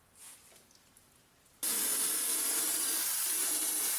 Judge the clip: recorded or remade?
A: recorded